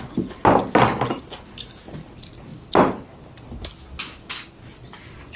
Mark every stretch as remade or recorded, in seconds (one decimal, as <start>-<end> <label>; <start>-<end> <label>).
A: 0.0-5.4 recorded